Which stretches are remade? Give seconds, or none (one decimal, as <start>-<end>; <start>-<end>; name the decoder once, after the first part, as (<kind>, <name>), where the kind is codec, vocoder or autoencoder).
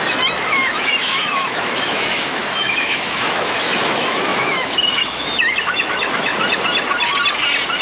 0.0-6.3 (autoencoder, DAC-VAE)